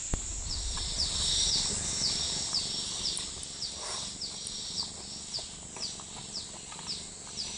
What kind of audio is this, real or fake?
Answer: real